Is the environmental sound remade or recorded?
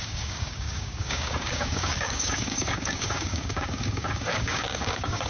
remade